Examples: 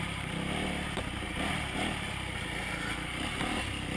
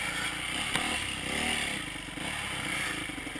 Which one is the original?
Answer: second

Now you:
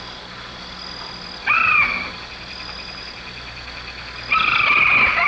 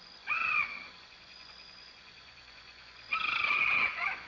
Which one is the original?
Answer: first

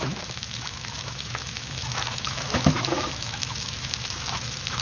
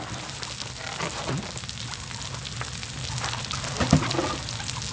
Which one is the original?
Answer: second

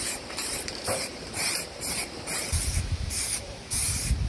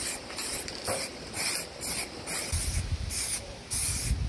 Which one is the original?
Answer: second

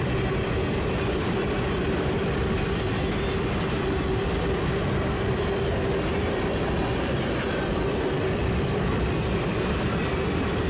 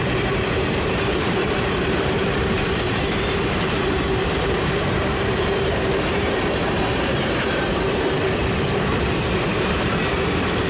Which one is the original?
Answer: first